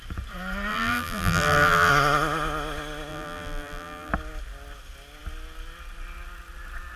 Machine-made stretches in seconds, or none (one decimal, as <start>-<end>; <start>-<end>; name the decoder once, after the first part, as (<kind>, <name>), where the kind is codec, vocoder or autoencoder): 0.7-1.9 (vocoder, BigVGAN v2); 3.1-4.1